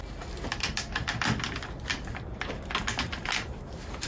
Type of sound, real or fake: real